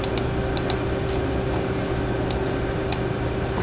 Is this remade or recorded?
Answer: recorded